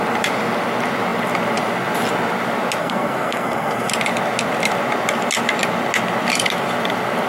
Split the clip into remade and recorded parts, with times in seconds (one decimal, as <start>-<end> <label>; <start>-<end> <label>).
0.0-2.8 recorded; 2.8-3.9 remade; 3.9-7.3 recorded

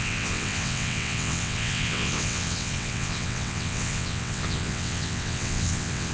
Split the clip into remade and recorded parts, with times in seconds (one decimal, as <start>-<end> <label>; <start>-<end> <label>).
0.0-6.1 remade

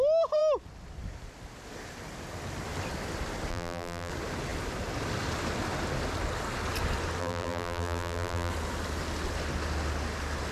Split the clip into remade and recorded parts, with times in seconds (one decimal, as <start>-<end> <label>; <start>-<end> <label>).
0.0-3.5 recorded; 3.5-4.1 remade; 4.1-7.2 recorded; 7.2-8.5 remade; 8.5-10.5 recorded

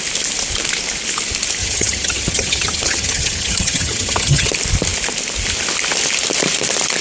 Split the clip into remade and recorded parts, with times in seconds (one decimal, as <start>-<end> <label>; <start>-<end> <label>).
0.0-1.6 recorded; 1.6-4.5 remade; 4.5-7.0 recorded

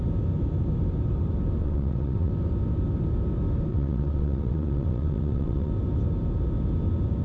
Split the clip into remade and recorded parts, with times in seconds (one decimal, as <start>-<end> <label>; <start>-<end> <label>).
0.0-1.6 recorded; 1.6-2.3 remade; 2.3-3.7 recorded; 3.7-5.7 remade; 5.7-7.2 recorded

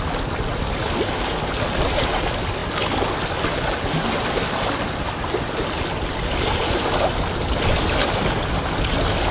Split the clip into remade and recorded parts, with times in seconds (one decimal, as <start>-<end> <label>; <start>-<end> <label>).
0.0-9.3 recorded